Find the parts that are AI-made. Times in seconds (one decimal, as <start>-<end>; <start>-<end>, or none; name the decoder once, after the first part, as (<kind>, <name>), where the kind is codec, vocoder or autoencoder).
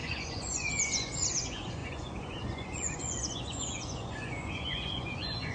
0.0-5.5 (vocoder, Vocos)